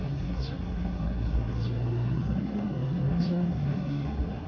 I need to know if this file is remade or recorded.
remade